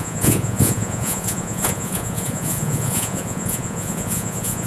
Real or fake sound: fake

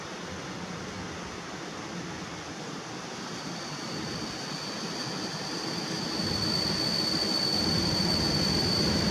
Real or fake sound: real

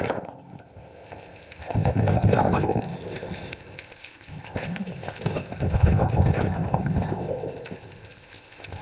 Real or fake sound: fake